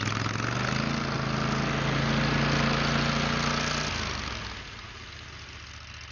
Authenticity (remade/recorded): recorded